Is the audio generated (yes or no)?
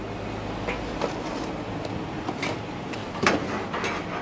no